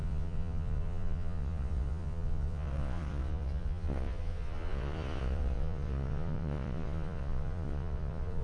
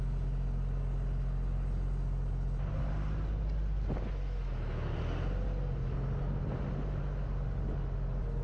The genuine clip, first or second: second